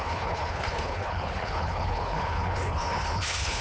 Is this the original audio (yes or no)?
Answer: no